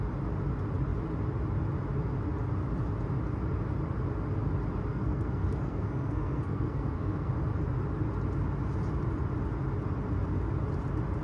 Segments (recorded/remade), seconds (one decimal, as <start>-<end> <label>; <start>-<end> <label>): 0.0-4.9 recorded; 4.9-7.3 remade; 7.3-11.2 recorded